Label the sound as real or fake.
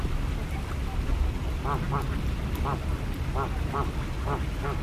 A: real